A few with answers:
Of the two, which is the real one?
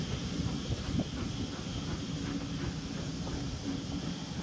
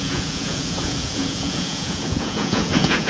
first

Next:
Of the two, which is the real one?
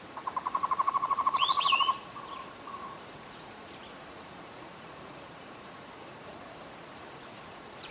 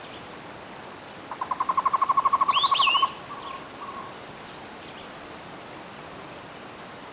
second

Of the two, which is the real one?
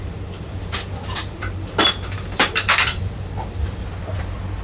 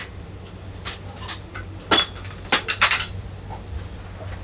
second